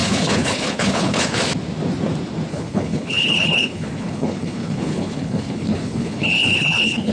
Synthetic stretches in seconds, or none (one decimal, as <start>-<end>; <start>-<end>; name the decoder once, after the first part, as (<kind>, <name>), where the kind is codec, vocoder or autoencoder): 0.0-1.4 (codec, HILCodec); 2.5-7.1